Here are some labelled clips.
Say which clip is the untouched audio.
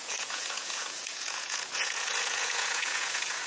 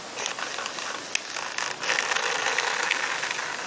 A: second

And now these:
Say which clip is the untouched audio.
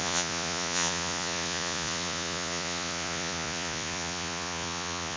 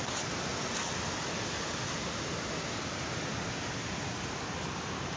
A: second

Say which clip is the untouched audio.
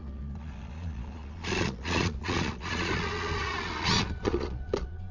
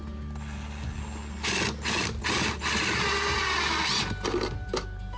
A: second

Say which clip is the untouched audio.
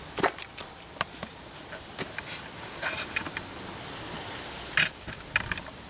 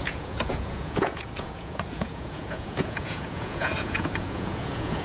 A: first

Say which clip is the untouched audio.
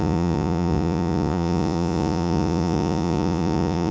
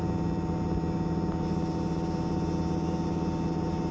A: second